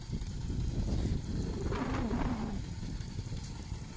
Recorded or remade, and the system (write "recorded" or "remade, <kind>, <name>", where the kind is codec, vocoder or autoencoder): recorded